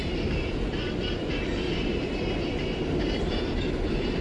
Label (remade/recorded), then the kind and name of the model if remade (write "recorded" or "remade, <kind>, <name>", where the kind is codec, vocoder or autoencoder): recorded